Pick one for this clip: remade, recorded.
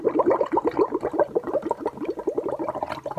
recorded